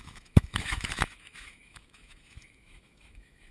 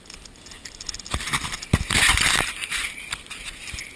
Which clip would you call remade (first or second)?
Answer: first